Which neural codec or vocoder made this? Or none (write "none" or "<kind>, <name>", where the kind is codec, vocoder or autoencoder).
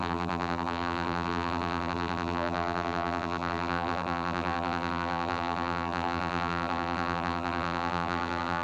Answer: vocoder, BigVGAN v2